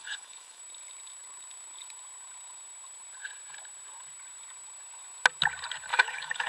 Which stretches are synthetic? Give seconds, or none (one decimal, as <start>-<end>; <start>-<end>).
0.0-0.6; 5.9-6.5